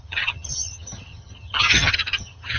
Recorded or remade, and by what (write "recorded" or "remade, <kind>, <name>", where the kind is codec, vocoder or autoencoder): remade, vocoder, HiFi-GAN